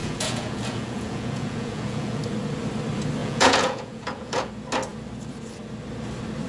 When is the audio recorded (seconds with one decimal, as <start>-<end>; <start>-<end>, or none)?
2.2-3.2; 4.5-6.5